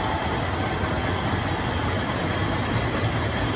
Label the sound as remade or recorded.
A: recorded